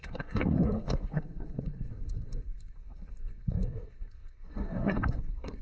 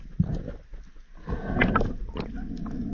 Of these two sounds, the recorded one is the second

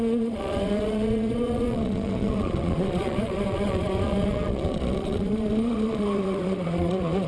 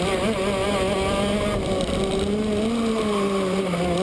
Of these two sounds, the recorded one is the second